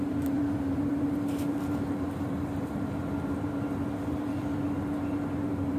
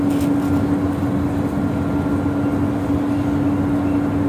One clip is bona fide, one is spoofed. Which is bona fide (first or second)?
second